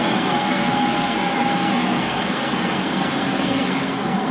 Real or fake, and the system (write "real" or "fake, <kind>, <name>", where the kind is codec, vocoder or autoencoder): fake, codec, SNAC